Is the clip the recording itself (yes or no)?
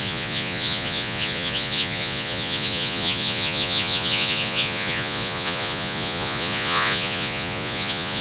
no